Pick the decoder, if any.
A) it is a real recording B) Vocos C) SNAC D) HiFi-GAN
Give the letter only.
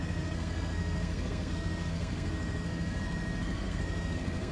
C